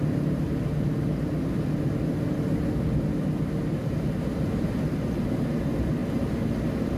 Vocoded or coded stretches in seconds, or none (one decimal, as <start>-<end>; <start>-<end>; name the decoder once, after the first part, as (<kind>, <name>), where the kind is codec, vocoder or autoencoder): none